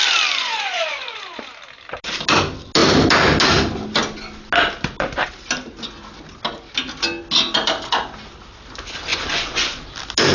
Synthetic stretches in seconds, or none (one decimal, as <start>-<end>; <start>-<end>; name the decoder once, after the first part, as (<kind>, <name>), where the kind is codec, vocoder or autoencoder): 0.4-1.4 (vocoder, Vocos); 9.1-9.8